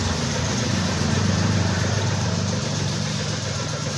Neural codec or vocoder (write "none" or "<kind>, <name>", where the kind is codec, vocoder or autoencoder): vocoder, BigVGAN v2